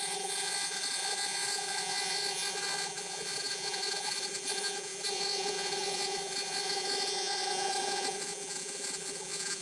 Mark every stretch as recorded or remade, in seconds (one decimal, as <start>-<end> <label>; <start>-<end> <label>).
0.0-9.6 remade